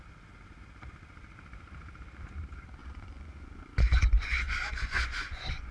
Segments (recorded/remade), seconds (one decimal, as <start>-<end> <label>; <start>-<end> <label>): 0.0-2.8 recorded; 2.8-5.7 remade